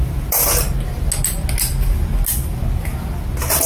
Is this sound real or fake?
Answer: real